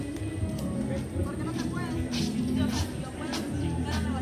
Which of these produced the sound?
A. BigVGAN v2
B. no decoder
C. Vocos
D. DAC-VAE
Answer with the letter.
B